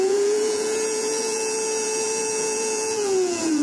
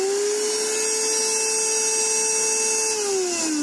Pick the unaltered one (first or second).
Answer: second